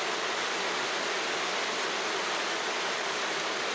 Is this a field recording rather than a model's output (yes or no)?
yes